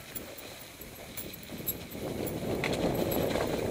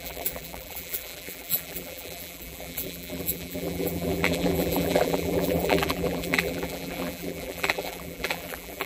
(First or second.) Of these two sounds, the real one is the first